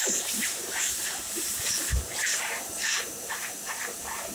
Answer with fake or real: fake